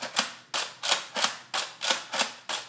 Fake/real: real